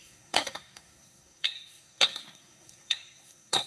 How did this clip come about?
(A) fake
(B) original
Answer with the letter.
A